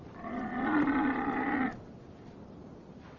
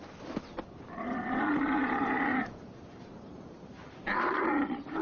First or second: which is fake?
second